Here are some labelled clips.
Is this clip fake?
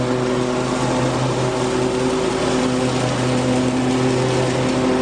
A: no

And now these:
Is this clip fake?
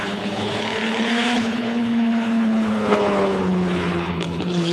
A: yes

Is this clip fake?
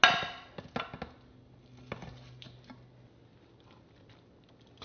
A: no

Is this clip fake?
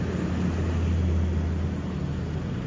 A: no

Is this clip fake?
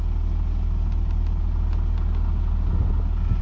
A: no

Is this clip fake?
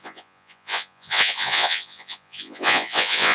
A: yes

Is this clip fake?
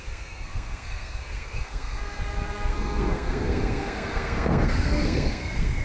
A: yes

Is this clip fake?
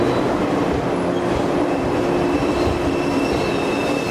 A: no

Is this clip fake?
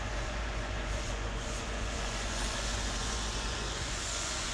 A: yes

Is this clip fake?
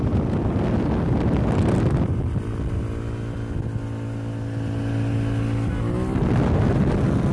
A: no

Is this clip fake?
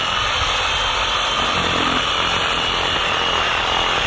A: no